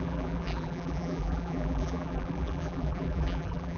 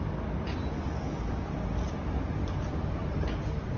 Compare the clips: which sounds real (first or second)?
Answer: second